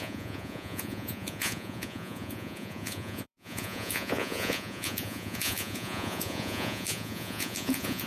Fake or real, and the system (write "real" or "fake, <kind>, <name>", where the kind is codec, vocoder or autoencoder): fake, vocoder, Vocos